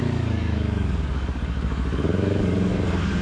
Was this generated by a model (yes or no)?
yes